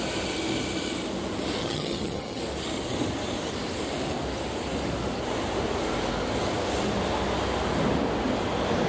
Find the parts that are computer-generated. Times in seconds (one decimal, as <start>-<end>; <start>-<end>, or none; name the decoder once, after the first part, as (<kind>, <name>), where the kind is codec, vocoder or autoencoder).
1.6-2.4 (vocoder, HiFi-GAN)